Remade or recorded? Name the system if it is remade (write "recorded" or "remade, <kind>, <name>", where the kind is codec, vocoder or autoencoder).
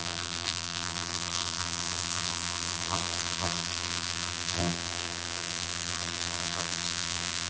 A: remade, vocoder, BigVGAN v2